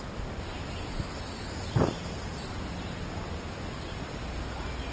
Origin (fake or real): real